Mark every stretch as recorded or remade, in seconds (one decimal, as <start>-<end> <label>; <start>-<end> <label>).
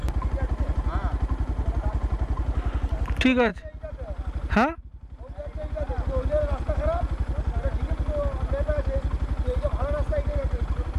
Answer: 0.0-11.0 recorded